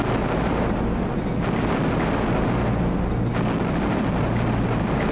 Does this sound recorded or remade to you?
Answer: recorded